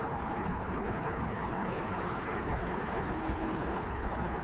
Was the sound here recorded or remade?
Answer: remade